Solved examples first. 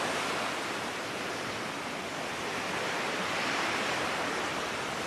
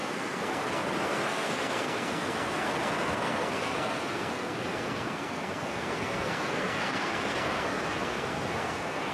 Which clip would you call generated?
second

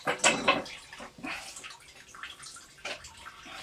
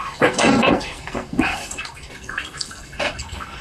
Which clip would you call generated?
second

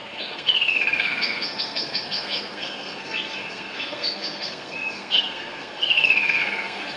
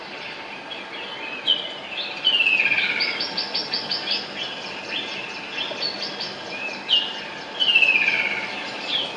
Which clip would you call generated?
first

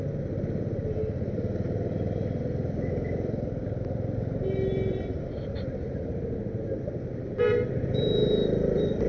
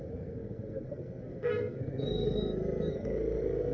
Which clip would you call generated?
second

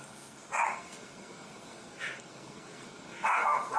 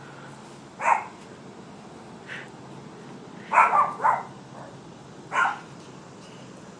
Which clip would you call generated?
first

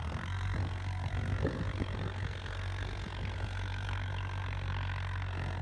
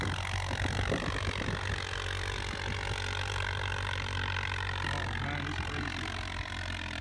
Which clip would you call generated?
first